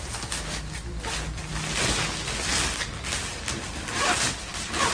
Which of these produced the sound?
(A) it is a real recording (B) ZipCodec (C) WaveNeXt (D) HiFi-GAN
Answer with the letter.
A